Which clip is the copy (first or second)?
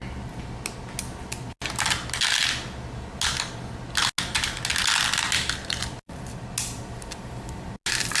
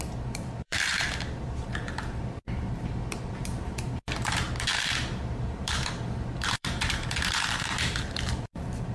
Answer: second